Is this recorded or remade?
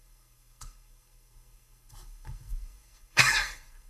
remade